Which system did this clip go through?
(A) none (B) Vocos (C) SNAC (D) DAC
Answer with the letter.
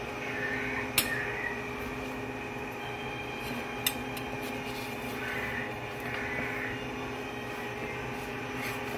A